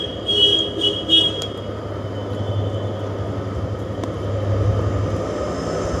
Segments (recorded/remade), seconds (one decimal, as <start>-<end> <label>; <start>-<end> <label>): 0.0-6.0 recorded